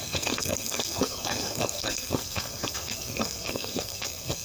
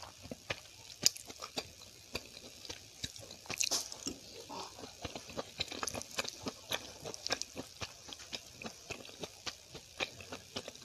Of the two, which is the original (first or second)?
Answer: second